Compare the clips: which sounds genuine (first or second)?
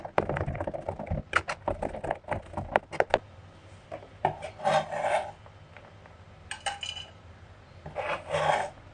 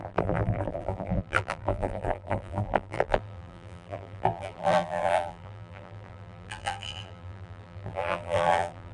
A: first